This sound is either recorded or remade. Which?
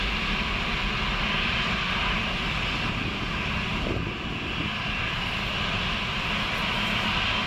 recorded